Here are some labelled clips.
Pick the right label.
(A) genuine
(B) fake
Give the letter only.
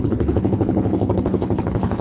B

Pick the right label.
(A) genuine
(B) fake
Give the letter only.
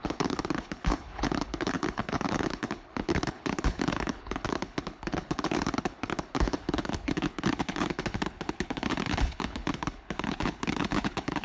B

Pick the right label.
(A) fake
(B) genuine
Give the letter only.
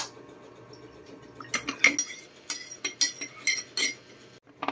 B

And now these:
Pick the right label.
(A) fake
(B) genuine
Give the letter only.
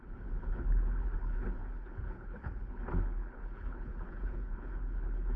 A